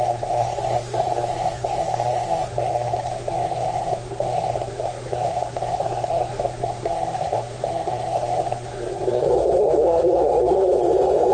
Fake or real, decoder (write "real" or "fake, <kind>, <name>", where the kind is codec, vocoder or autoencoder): fake, codec, SNAC